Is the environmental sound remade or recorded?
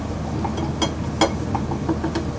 recorded